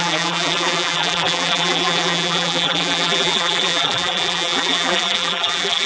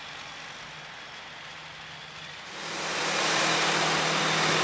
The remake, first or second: first